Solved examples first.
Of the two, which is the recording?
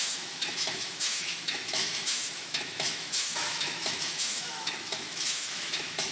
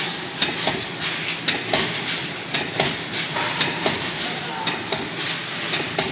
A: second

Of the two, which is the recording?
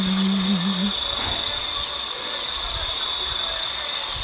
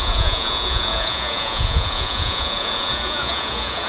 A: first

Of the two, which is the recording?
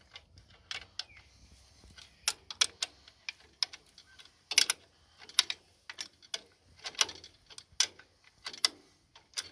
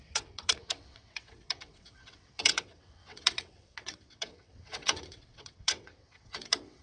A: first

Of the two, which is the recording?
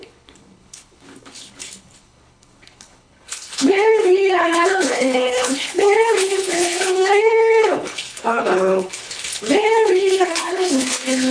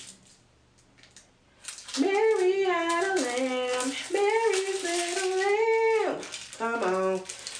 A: second